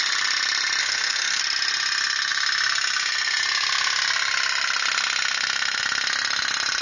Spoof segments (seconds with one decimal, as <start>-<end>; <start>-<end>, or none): 0.8-1.4